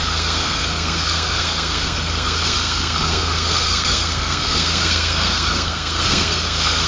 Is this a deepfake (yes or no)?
yes